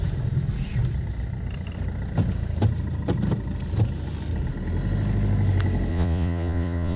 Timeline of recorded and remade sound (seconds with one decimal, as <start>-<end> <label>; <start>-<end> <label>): 0.0-5.9 recorded; 5.9-7.0 remade